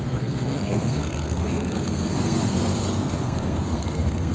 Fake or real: fake